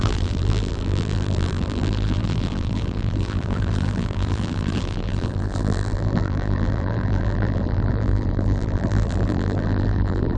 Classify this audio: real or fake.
fake